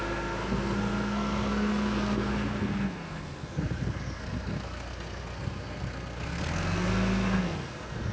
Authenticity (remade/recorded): remade